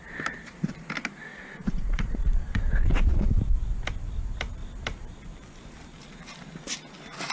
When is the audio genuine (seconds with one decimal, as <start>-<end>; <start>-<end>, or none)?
0.0-1.3; 3.4-7.3